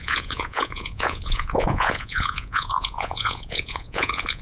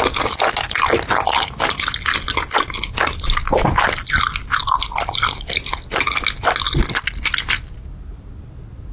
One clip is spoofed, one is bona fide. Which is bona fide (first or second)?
second